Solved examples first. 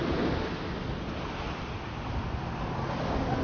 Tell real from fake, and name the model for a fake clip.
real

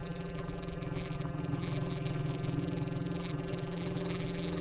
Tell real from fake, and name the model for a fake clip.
fake, vocoder, BigVGAN v2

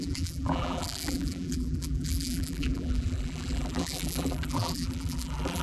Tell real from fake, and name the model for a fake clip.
fake, vocoder, BigVGAN v2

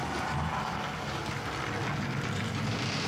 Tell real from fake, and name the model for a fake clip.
real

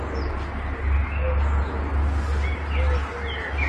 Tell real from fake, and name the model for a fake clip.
real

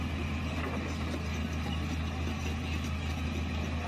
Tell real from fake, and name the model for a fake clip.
real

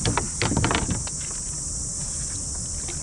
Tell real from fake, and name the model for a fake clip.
real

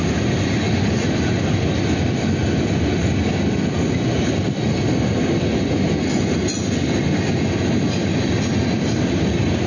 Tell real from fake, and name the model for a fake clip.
real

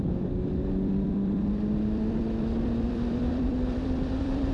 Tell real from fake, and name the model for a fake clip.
fake, vocoder, BigVGAN v2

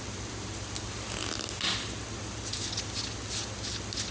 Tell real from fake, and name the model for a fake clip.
real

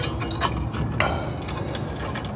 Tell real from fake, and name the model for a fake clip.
real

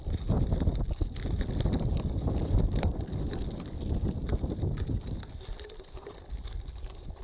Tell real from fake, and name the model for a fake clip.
fake, vocoder, BigVGAN v2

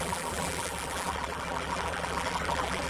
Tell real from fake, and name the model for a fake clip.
fake, vocoder, BigVGAN v2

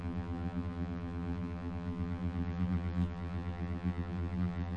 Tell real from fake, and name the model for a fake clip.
fake, vocoder, BigVGAN v2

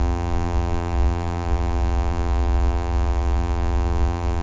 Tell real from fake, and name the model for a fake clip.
fake, vocoder, BigVGAN v2